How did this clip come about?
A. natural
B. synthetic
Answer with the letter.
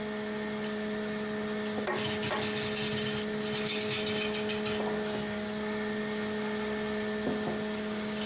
A